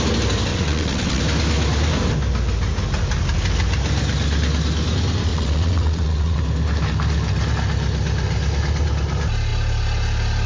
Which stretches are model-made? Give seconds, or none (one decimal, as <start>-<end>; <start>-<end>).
0.5-1.2; 5.3-6.4